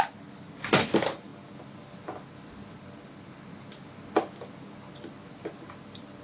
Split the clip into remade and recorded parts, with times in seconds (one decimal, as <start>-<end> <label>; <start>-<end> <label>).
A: 0.0-6.2 recorded